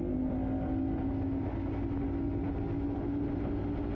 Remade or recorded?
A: recorded